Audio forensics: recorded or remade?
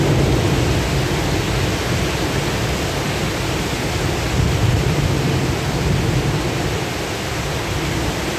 recorded